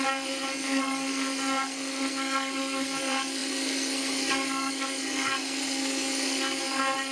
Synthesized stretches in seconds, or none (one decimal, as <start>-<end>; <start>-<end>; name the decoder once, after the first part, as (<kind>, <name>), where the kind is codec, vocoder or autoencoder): 0.0-7.1 (codec, SNAC)